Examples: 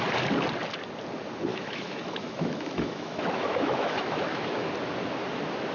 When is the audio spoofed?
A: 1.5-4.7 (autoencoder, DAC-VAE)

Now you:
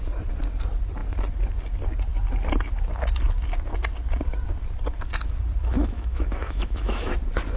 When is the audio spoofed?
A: 5.6-7.1 (autoencoder, DAC-VAE)

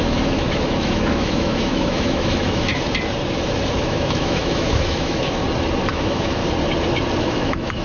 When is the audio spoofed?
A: 0.0-2.7 (autoencoder, DAC-VAE); 3.8-5.4; 5.9-6.4; 7.2-7.8

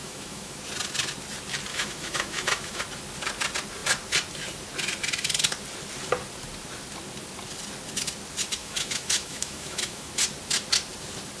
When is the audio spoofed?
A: 0.0-0.6 (autoencoder, DAC-VAE); 1.7-2.8; 8.6-10.1

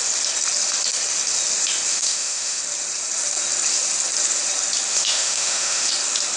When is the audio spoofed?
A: 1.9-2.6 (autoencoder, DAC-VAE); 4.9-5.9